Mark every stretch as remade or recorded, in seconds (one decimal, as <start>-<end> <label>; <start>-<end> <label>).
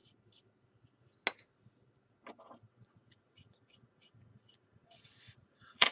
0.0-2.7 recorded; 2.7-5.9 remade